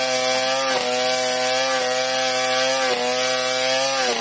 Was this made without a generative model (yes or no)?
yes